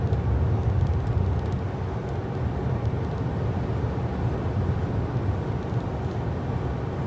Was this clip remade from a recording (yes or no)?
no